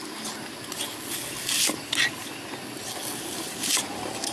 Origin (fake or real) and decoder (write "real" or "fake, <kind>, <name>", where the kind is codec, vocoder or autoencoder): real